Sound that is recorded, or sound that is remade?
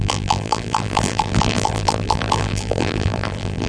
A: remade